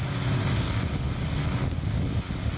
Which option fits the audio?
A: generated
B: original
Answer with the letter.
B